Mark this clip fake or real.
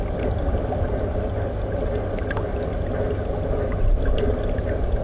real